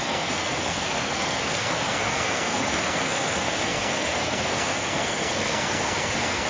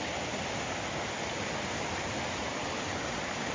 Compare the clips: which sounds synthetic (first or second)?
first